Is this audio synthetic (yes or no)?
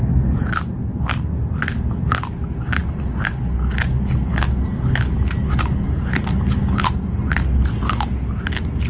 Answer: no